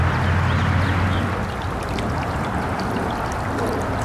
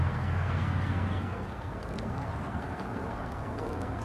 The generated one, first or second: second